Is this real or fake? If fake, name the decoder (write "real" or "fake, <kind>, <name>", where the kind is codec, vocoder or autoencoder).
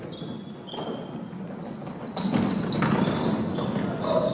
real